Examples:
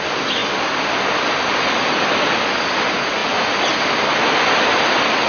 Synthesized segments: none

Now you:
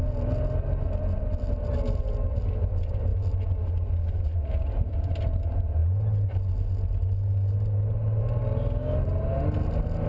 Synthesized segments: none